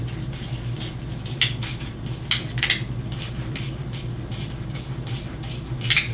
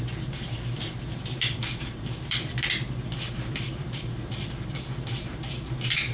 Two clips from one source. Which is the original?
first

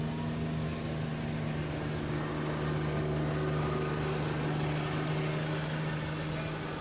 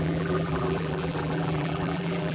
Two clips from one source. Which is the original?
first